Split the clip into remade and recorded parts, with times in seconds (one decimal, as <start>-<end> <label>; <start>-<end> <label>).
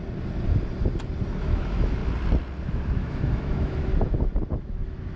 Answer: 0.0-1.4 recorded; 1.4-2.0 remade; 2.0-2.6 recorded; 2.6-3.9 remade; 3.9-4.5 recorded; 4.5-5.2 remade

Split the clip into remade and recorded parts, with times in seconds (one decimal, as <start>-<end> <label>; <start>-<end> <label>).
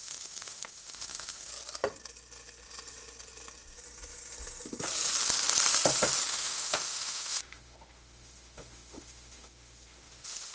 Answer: 0.0-1.5 remade; 1.5-6.3 recorded; 6.3-10.5 remade